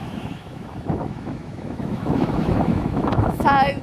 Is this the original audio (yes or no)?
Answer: no